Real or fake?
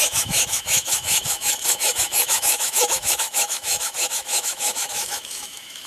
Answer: fake